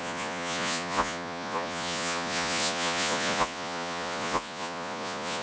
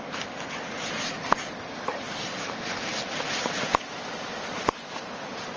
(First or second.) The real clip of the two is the second